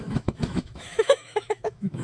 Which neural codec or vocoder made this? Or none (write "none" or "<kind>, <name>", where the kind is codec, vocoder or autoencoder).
autoencoder, DAC-VAE